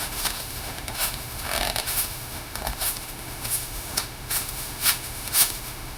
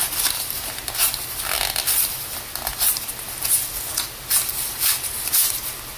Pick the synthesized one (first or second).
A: first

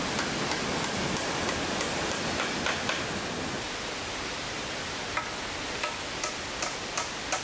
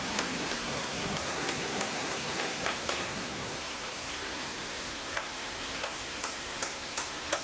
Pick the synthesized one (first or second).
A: second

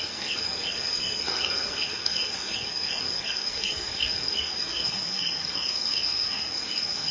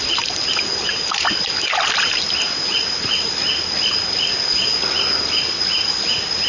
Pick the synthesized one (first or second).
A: first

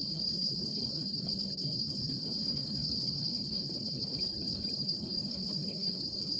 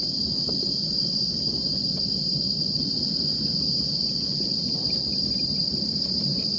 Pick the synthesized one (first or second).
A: first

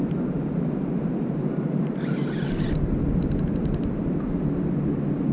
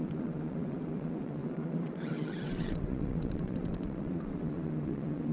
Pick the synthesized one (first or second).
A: second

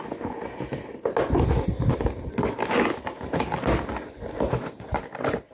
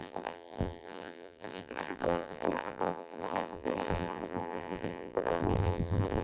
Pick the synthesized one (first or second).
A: second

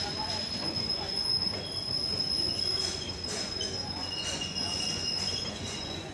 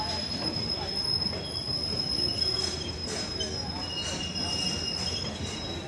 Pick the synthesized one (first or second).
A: first